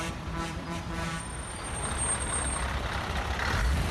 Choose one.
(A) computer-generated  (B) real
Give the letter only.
A